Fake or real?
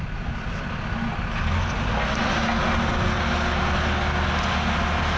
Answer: real